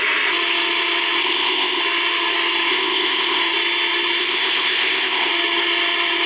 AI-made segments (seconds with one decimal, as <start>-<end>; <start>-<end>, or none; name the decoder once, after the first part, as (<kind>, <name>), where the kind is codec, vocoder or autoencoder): 1.2-1.8 (codec, ZipCodec); 2.7-3.4; 4.2-5.3